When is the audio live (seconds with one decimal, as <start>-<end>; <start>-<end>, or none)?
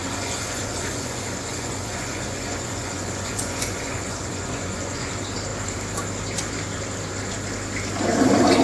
5.1-8.6